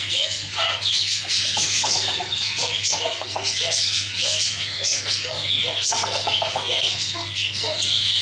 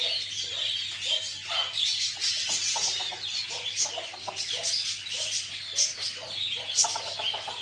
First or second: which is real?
second